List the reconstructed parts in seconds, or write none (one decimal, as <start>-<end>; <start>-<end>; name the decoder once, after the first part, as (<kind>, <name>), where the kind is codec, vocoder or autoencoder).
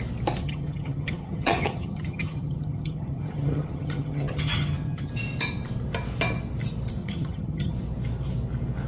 0.4-5.1 (vocoder, HiFi-GAN); 7.0-7.7